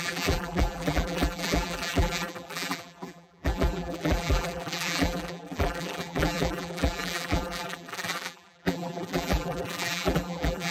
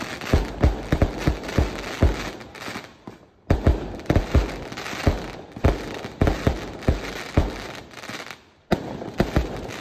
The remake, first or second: first